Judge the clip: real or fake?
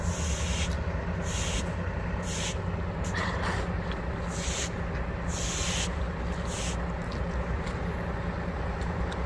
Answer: real